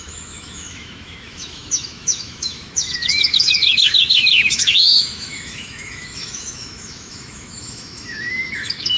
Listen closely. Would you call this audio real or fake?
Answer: fake